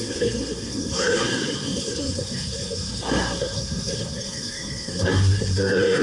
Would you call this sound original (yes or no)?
no